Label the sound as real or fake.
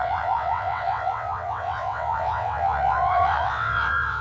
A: fake